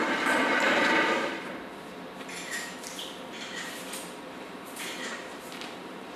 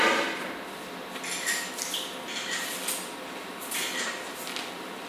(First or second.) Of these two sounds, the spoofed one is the first